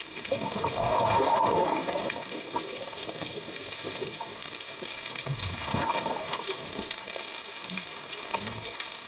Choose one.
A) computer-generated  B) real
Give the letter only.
A